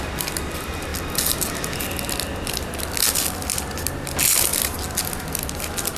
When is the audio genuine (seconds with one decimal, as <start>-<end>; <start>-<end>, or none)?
0.0-6.0